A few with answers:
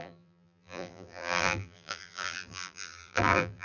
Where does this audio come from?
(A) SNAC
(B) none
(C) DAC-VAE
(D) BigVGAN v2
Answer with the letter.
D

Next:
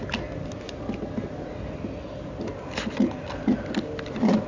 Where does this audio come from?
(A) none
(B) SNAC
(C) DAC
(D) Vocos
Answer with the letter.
A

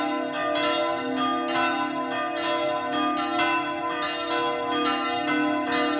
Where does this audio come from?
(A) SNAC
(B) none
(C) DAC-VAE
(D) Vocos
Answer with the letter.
B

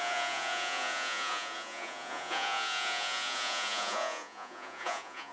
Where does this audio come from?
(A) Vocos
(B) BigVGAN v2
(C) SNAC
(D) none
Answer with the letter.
A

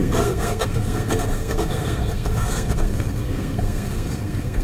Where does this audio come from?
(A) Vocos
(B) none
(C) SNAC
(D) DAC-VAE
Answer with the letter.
C